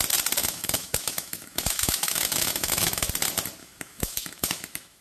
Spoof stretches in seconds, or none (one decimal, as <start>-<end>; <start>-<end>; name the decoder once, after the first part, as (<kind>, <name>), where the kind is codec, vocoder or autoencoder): 0.4-3.1 (autoencoder, DAC-VAE); 3.6-5.0